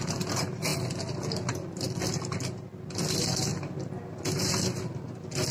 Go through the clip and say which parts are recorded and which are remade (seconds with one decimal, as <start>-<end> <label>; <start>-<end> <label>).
0.0-0.7 remade; 0.7-2.9 recorded; 2.9-5.5 remade